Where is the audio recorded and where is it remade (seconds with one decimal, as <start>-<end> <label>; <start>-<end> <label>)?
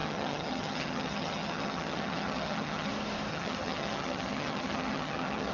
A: 0.0-2.9 remade; 2.9-3.3 recorded; 3.3-5.5 remade